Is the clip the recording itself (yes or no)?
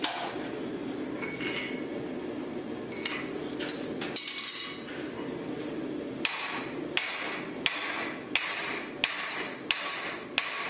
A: yes